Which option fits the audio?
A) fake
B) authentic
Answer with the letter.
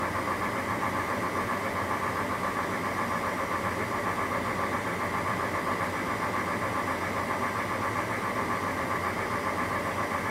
B